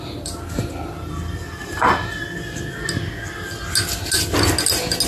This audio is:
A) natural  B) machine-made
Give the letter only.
A